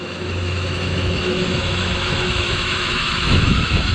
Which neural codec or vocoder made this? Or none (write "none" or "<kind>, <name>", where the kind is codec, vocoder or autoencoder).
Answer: autoencoder, DAC-VAE